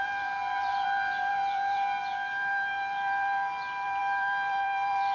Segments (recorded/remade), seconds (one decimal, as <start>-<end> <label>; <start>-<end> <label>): 0.0-5.1 remade